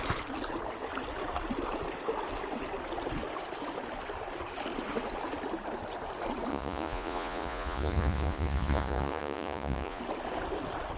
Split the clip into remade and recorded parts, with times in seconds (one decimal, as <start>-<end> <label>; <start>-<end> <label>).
0.0-6.5 recorded; 6.5-10.0 remade; 10.0-11.0 recorded